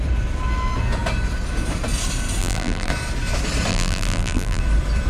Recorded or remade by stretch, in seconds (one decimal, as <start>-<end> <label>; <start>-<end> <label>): 0.0-2.4 recorded; 2.4-2.9 remade; 2.9-3.7 recorded; 3.7-4.6 remade; 4.6-5.1 recorded